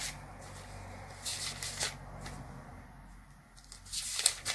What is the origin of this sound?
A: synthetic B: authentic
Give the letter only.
B